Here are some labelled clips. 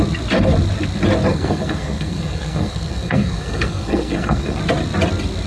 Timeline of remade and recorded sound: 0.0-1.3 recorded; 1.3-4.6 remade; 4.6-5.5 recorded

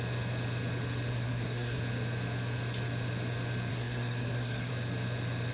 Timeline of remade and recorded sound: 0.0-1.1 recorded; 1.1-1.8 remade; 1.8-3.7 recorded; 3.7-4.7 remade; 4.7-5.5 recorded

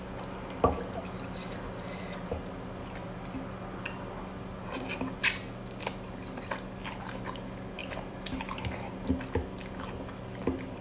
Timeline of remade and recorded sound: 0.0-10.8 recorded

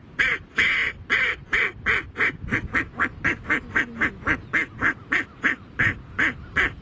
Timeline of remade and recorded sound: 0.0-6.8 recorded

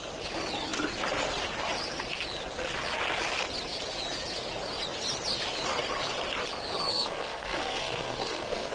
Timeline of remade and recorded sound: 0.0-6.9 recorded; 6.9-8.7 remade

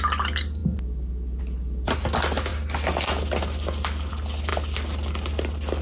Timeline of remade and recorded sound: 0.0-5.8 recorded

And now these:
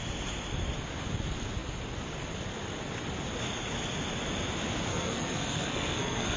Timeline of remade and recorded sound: 0.0-4.9 recorded; 4.9-6.4 remade